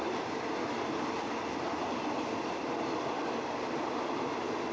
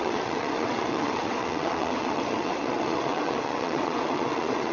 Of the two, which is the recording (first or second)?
first